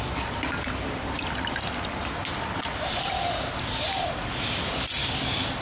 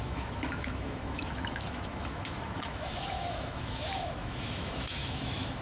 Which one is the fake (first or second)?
second